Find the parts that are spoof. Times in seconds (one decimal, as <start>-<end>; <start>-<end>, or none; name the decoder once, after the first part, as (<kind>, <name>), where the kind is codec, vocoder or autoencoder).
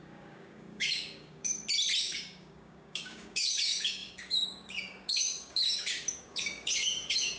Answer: 0.0-1.5 (codec, DAC); 2.0-7.4